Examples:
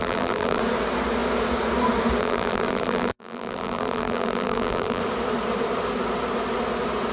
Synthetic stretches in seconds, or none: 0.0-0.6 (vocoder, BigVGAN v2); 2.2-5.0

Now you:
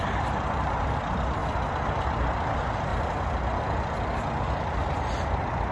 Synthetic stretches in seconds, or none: 0.0-1.4 (vocoder, BigVGAN v2); 2.0-2.9; 4.6-5.7

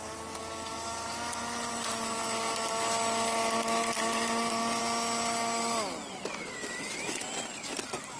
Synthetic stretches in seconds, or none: none

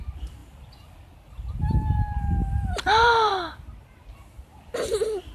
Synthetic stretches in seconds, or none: 2.4-3.3 (vocoder, BigVGAN v2)

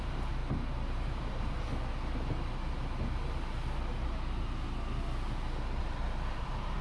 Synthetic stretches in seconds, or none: 0.0-0.4 (vocoder, BigVGAN v2); 0.9-1.7; 5.8-6.8

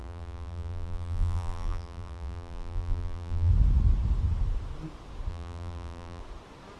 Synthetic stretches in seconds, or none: 0.0-3.5 (vocoder, BigVGAN v2); 5.3-6.2

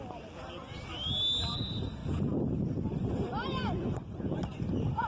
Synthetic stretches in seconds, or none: none